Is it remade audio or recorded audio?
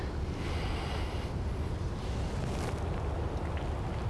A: recorded